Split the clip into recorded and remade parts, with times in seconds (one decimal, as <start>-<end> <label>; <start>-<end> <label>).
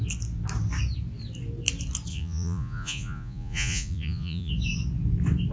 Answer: 0.0-2.1 recorded; 2.1-4.5 remade; 4.5-5.5 recorded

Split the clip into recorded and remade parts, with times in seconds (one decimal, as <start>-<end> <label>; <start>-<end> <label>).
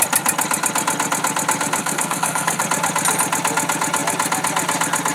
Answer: 0.0-1.8 recorded; 1.8-2.6 remade; 2.6-5.1 recorded